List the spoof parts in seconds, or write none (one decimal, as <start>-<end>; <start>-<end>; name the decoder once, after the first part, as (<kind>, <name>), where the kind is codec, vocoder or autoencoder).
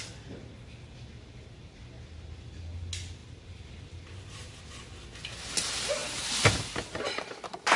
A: 3.2-4.6 (vocoder, BigVGAN v2)